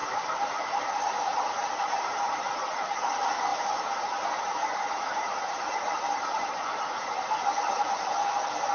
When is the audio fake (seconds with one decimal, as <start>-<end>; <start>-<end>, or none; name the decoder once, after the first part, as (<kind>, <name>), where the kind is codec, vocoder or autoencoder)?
0.0-2.5 (vocoder, BigVGAN v2); 3.5-7.3